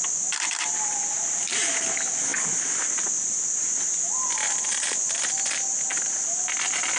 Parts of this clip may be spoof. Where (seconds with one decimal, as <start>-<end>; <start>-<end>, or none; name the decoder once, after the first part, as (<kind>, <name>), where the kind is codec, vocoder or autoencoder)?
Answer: none